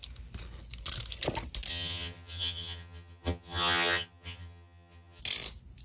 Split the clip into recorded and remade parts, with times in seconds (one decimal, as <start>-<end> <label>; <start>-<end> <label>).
0.0-1.7 recorded; 1.7-5.2 remade; 5.2-5.8 recorded